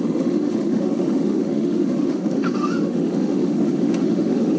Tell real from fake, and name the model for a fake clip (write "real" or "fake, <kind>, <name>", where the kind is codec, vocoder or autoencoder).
fake, autoencoder, DAC-VAE